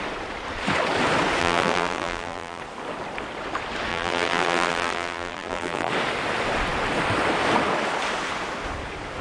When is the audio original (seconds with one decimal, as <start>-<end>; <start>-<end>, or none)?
0.0-1.4; 2.6-3.9; 5.9-9.2